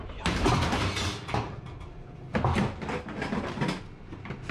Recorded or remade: recorded